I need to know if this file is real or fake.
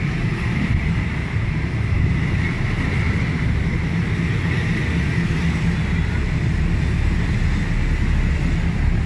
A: real